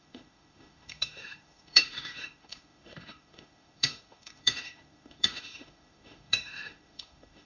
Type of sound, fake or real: fake